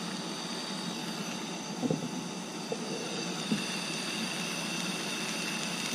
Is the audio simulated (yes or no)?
no